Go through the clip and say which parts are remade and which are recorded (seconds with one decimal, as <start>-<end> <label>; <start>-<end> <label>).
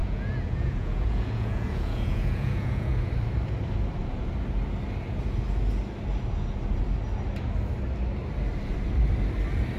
0.0-3.1 remade; 3.1-9.8 recorded